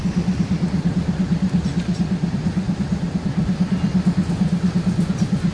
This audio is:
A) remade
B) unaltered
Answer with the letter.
B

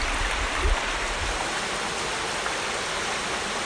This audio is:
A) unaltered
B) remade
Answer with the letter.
A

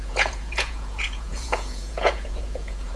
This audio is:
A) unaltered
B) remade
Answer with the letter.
B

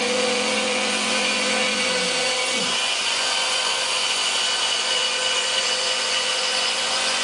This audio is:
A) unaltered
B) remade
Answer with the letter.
B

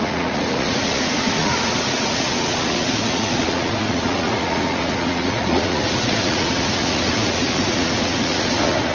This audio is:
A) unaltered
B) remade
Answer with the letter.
B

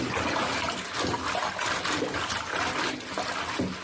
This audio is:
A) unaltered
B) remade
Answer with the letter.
A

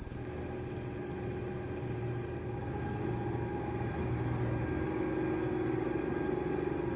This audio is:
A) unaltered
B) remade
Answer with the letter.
A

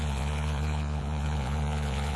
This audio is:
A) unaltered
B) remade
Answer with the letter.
B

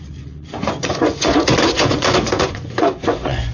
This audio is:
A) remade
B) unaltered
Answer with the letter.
A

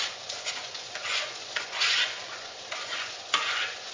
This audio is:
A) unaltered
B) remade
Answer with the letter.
B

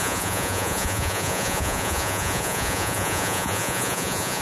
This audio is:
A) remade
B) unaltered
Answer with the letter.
A